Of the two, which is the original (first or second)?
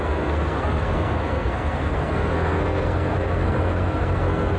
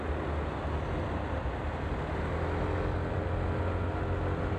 second